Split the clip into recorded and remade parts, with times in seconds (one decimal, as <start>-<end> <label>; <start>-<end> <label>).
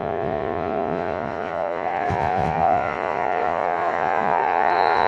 0.0-5.1 remade